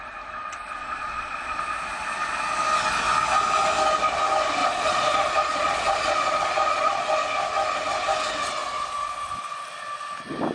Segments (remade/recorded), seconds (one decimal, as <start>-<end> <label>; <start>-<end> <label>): 0.0-0.8 recorded; 0.8-1.6 remade; 1.6-4.6 recorded; 4.6-7.1 remade; 7.1-10.5 recorded